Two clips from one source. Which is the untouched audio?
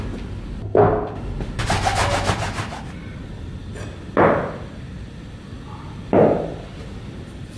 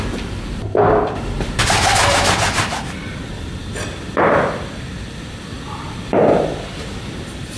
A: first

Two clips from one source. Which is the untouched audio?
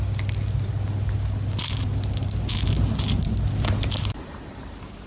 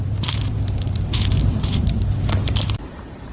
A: first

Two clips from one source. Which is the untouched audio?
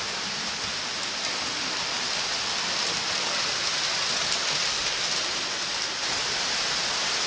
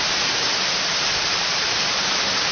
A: first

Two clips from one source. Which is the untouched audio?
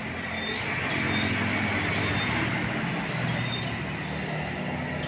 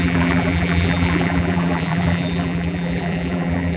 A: first